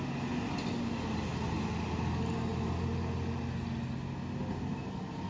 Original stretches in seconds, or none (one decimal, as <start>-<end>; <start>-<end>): 0.0-5.3